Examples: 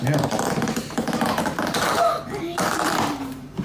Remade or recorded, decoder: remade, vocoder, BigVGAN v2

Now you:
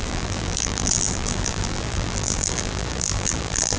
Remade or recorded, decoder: remade, vocoder, BigVGAN v2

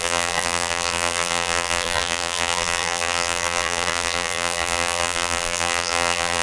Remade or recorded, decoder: remade, vocoder, BigVGAN v2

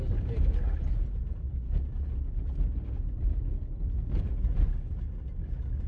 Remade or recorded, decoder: recorded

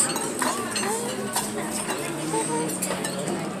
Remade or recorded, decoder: recorded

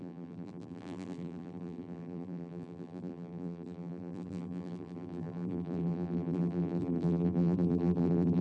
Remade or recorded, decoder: remade, vocoder, BigVGAN v2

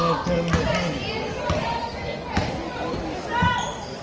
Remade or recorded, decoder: recorded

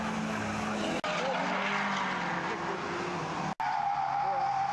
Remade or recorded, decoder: recorded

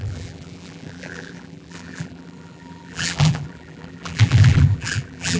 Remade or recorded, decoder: remade, vocoder, BigVGAN v2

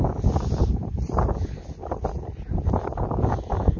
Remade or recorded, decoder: recorded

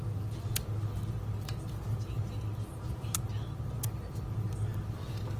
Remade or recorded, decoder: recorded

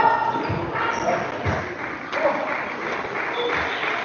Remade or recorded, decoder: recorded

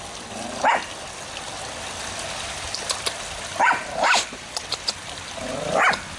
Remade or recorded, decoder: recorded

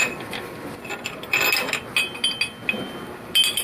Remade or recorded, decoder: recorded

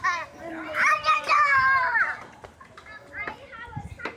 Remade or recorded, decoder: recorded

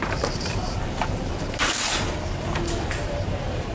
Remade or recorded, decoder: remade, vocoder, BigVGAN v2